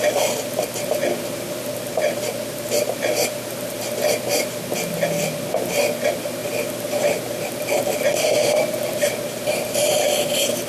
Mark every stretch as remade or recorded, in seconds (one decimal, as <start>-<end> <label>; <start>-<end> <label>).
0.0-10.7 recorded